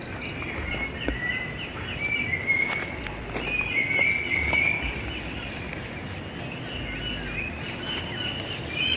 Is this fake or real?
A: real